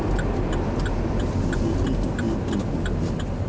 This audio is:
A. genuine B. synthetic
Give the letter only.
A